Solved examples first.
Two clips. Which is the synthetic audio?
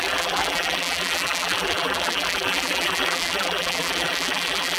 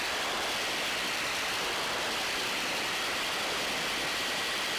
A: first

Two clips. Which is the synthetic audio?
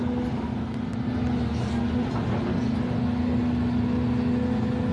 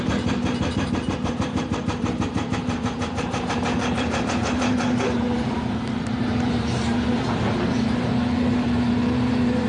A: second